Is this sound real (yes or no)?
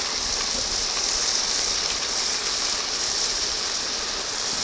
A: no